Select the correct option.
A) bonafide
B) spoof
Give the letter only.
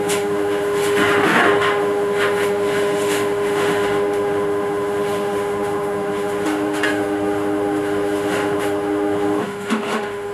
B